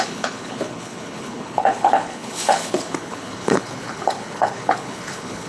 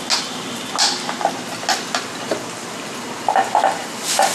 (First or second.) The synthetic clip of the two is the first